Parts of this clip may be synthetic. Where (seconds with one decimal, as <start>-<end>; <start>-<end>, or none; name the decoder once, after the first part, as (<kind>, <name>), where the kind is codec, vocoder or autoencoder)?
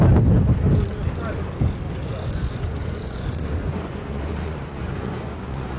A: 2.0-5.8 (vocoder, Vocos)